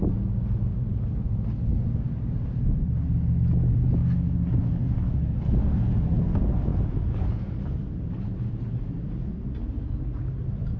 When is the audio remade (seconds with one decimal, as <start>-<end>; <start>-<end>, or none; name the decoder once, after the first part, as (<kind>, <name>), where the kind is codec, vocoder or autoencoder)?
6.7-7.5 (vocoder, Vocos)